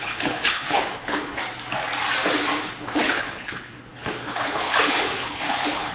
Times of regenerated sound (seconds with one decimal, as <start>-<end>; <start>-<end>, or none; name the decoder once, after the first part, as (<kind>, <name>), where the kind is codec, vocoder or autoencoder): 0.0-1.4 (codec, HILCodec); 2.7-5.9